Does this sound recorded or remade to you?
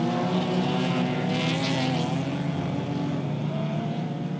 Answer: recorded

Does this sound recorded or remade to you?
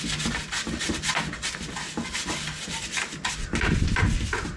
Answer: recorded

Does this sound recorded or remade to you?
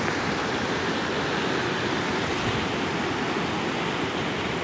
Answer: recorded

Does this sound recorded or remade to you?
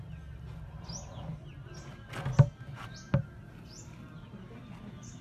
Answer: recorded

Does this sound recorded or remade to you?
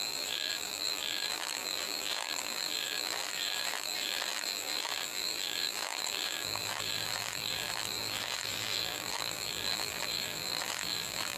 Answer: remade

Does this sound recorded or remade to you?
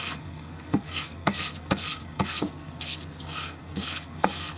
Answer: remade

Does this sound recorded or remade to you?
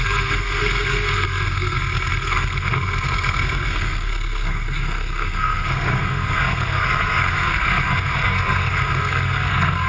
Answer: remade